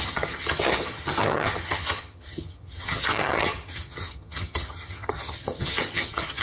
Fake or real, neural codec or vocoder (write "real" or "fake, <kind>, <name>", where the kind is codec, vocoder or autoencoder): fake, vocoder, HiFi-GAN